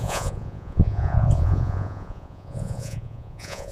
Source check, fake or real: fake